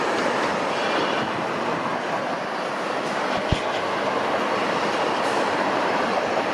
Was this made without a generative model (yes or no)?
yes